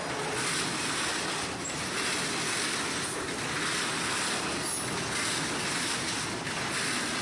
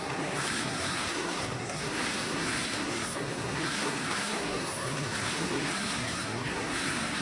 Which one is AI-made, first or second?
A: second